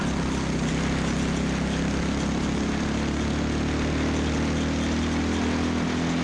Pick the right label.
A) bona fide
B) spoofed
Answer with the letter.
A